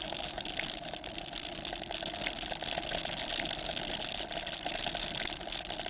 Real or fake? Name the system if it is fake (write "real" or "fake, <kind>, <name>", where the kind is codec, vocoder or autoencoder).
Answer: real